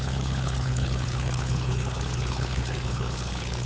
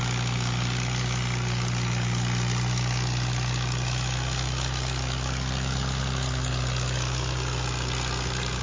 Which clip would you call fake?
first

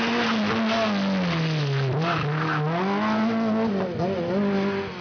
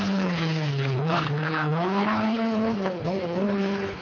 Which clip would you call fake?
second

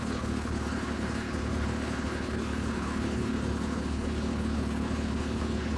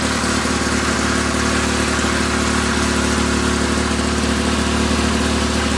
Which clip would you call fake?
first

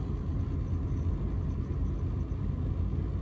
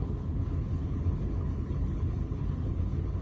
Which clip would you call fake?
second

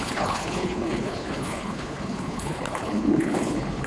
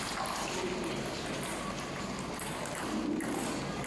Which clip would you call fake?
first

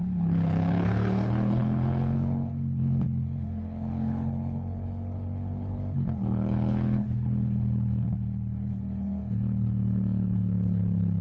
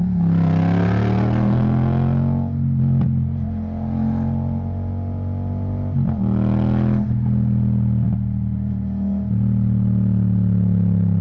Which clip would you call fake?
first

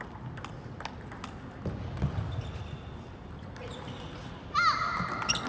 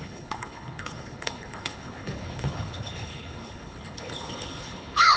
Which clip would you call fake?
second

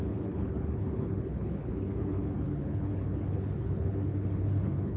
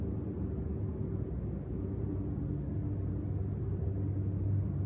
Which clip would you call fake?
first